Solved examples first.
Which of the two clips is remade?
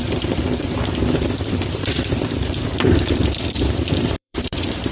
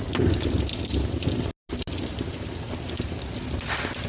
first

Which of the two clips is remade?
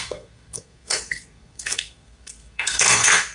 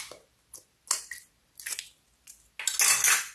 first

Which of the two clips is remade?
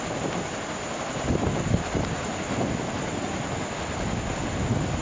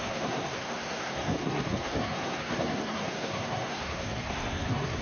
second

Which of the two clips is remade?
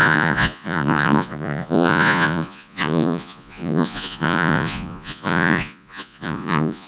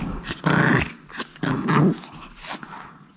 first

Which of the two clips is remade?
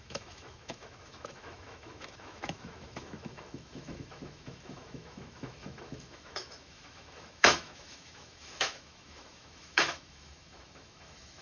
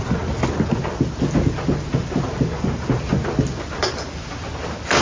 first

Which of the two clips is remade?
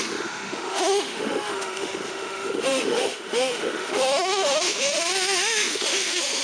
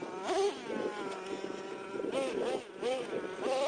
first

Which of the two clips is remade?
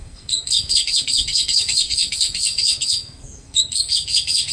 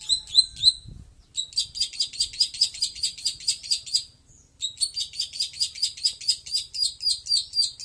first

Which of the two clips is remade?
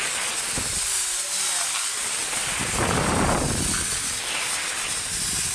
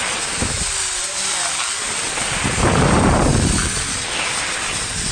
second